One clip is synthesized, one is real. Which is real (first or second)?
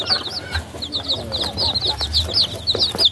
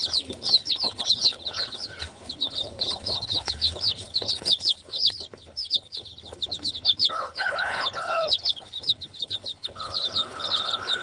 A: first